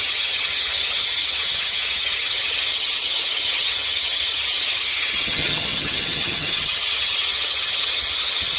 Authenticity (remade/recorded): remade